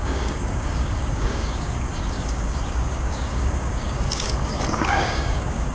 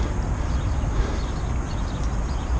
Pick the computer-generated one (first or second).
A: first